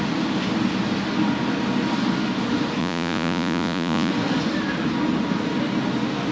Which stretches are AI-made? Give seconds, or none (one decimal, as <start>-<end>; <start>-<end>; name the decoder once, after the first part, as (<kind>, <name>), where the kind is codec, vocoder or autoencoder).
2.8-4.1 (vocoder, Vocos)